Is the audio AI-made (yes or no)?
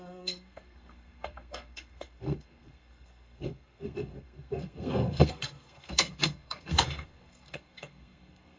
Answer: yes